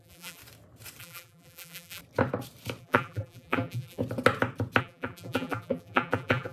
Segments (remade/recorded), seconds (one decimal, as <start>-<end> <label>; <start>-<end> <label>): 0.0-0.4 remade; 0.4-1.0 recorded; 1.0-2.0 remade; 2.0-2.8 recorded; 2.8-4.0 remade; 4.0-4.8 recorded; 4.8-6.5 remade